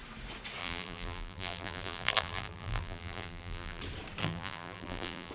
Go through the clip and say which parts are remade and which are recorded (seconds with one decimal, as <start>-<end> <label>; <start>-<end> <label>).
0.0-0.6 recorded; 0.6-3.8 remade; 3.8-4.2 recorded; 4.2-5.3 remade